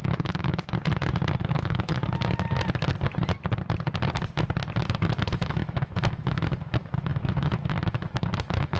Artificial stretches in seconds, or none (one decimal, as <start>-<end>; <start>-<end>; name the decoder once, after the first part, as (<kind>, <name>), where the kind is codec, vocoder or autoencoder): 0.0-0.7 (autoencoder, DAC-VAE); 1.4-2.0; 4.8-8.8